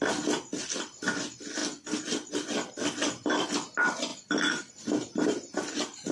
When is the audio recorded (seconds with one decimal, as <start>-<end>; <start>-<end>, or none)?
0.0-6.1